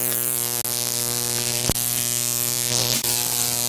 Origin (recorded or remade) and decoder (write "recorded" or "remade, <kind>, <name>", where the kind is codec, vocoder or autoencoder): recorded